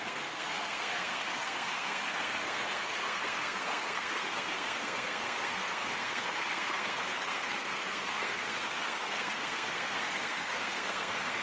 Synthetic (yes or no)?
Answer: yes